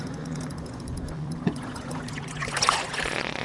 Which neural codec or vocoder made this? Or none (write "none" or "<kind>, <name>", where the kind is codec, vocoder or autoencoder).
vocoder, Vocos